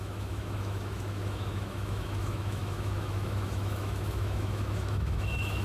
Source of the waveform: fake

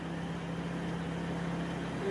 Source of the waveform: real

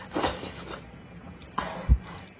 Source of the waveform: real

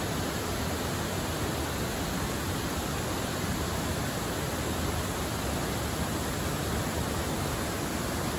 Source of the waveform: real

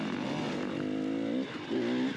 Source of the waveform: real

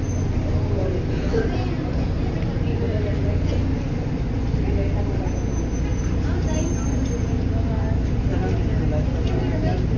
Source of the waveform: real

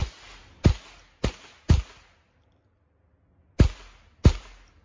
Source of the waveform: real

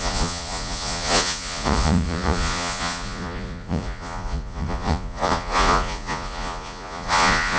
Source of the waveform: fake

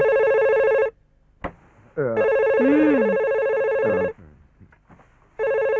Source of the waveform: real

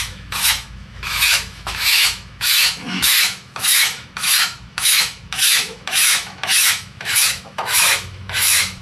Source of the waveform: fake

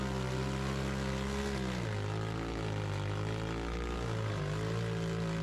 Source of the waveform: real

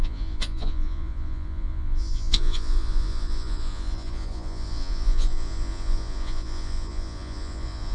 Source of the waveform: fake